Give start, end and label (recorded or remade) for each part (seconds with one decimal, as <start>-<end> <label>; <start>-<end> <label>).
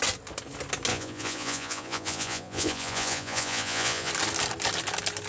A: 0.0-0.9 recorded; 0.9-4.1 remade; 4.1-5.3 recorded